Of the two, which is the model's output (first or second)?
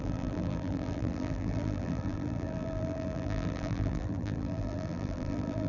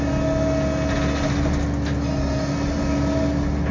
first